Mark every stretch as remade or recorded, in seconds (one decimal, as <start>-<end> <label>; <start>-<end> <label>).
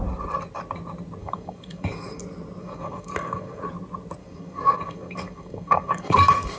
0.0-1.2 recorded; 1.2-2.2 remade; 2.2-2.6 recorded; 2.6-3.6 remade; 3.6-4.2 recorded; 4.2-6.6 remade